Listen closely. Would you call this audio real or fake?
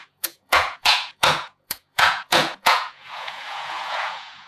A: fake